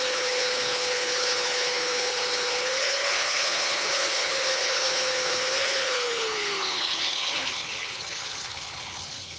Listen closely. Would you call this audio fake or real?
fake